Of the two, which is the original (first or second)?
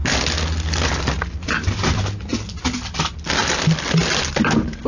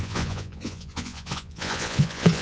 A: first